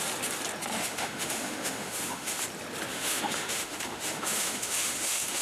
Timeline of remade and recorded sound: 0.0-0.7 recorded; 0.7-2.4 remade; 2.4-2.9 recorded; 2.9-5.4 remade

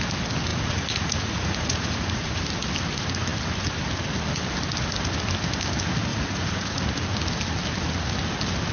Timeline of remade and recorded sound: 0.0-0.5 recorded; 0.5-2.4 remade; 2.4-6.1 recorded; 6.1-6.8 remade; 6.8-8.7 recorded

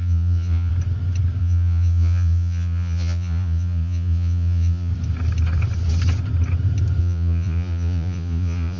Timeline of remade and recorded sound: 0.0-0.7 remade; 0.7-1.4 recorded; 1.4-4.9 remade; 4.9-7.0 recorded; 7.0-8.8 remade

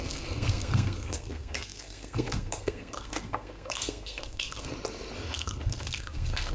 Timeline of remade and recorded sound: 0.0-4.7 remade; 4.7-5.3 recorded; 5.3-6.5 remade

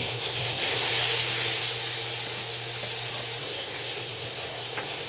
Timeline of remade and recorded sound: 0.0-0.9 remade; 0.9-3.4 recorded; 3.4-5.1 remade